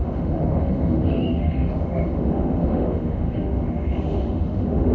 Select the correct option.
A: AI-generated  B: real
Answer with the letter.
A